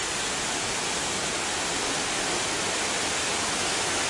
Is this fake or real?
real